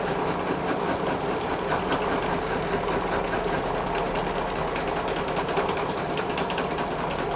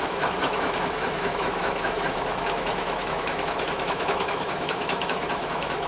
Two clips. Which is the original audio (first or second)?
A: first